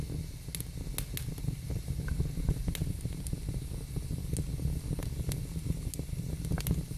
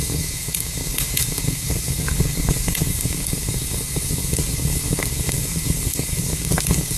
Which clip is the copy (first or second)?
second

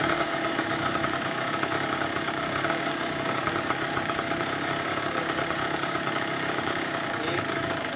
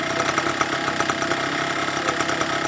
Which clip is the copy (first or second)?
first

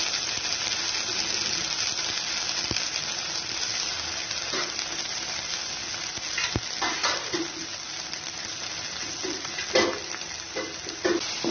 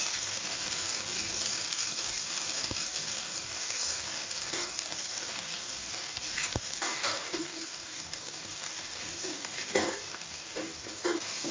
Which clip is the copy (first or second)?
second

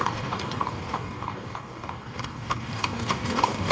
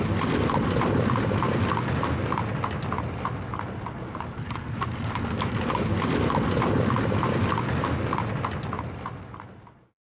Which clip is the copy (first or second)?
first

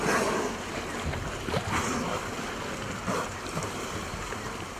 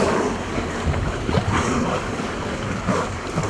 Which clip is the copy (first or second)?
second